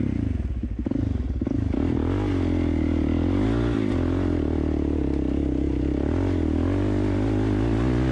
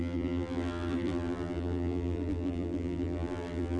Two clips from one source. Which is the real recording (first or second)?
first